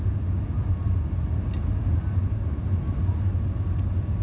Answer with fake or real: real